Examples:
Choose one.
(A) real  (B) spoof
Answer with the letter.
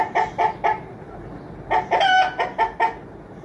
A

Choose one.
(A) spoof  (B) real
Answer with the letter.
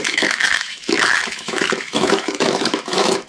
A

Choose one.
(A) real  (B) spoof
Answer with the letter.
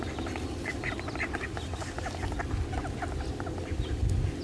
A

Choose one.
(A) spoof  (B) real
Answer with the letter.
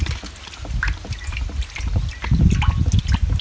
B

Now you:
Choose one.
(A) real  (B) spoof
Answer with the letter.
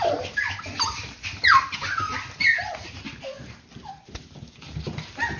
A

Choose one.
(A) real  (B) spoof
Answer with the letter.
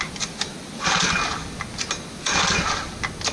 A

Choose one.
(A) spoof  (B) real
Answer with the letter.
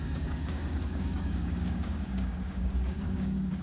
A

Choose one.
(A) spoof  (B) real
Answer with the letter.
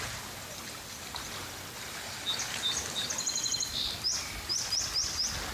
B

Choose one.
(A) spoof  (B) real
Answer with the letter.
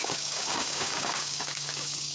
A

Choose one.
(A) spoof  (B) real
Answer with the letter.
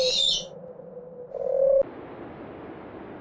B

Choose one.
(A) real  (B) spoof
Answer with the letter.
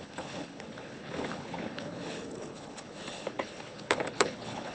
B